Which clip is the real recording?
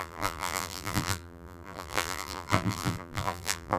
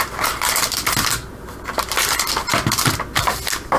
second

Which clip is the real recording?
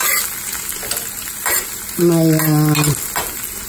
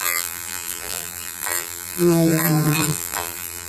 first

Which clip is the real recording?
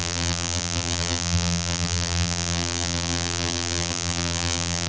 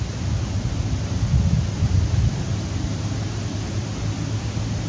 second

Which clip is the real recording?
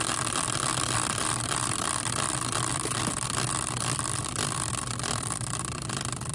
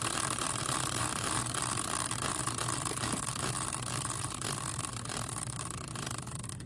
first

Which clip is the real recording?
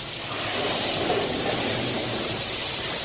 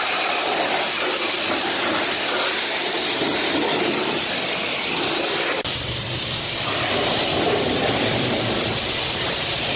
first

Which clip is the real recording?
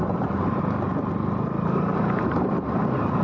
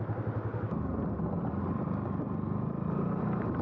second